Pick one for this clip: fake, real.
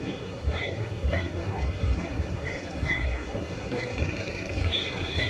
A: fake